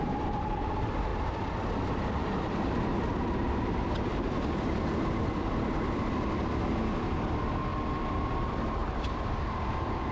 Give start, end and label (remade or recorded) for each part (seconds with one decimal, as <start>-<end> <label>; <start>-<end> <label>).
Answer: 0.0-10.1 remade